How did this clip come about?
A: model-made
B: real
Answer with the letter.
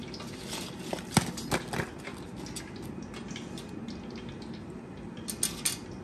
B